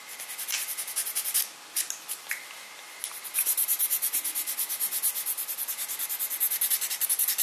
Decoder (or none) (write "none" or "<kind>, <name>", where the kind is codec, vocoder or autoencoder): none